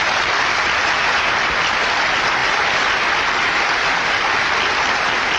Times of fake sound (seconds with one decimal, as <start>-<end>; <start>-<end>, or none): none